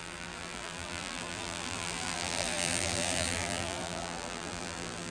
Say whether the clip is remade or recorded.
remade